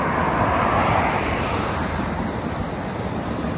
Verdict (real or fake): fake